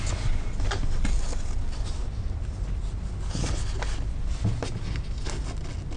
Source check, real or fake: real